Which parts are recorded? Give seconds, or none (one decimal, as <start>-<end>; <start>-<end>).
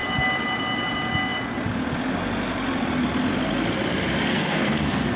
0.0-4.3